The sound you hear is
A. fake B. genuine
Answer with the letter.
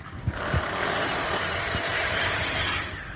B